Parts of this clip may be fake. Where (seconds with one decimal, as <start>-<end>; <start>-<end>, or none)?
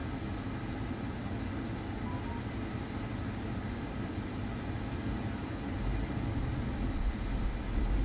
none